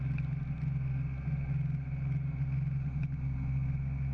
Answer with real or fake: real